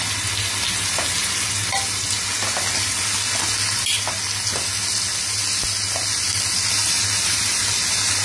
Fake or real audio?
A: real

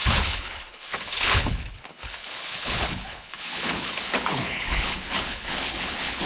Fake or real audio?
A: fake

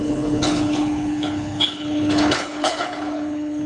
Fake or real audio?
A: fake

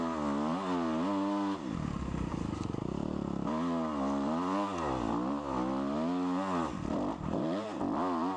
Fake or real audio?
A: real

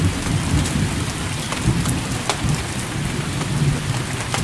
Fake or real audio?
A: real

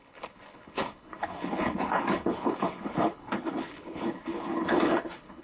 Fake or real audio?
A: fake